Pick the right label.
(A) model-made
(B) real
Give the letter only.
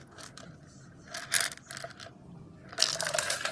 B